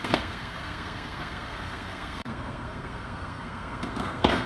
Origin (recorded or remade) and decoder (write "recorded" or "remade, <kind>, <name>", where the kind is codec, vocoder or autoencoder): remade, codec, SNAC